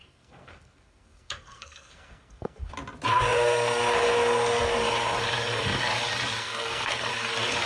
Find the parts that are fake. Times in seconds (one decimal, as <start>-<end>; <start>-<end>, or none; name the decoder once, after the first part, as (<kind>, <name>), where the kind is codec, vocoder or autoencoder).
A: 0.0-2.7 (codec, SNAC); 6.4-7.1